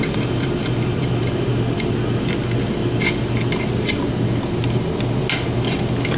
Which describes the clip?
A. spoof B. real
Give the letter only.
B